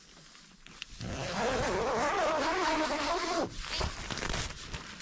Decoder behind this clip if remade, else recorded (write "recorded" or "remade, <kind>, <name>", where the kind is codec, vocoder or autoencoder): recorded